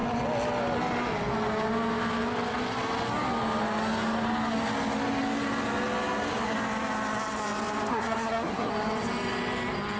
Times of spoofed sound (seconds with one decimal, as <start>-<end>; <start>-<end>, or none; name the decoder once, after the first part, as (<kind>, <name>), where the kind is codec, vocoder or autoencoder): 7.9-8.7 (codec, SNAC)